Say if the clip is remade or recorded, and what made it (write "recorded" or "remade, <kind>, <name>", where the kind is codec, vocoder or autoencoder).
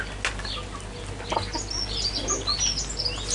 recorded